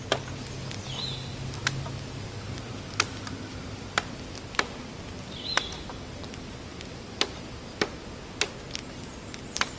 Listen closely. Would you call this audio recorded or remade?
recorded